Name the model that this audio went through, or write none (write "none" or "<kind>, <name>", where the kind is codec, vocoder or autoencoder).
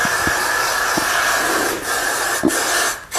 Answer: none